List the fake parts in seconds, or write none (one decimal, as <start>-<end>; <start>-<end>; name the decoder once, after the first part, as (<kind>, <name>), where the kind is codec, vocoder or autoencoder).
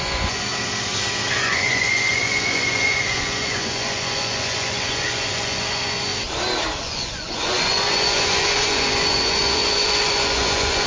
0.0-0.5 (vocoder, Vocos); 1.3-6.1; 6.8-10.9